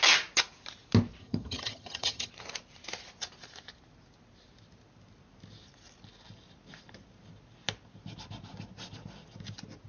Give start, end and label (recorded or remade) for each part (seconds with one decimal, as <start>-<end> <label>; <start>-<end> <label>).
0.0-1.2 recorded; 1.2-2.3 remade; 2.3-9.9 recorded